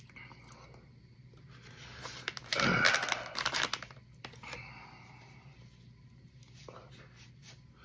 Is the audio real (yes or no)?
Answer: yes